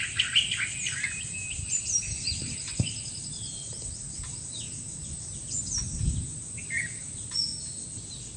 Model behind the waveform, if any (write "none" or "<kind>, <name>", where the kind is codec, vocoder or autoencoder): none